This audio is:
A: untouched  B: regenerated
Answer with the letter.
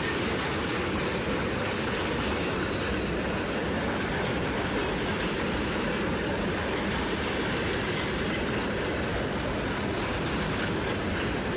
A